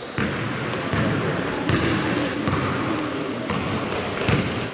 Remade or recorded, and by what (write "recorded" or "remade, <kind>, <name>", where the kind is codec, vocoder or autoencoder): recorded